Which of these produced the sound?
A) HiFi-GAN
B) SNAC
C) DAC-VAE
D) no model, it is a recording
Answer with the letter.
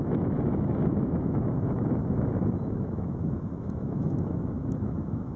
C